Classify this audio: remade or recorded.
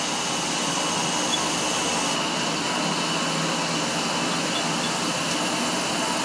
recorded